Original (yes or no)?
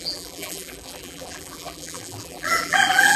no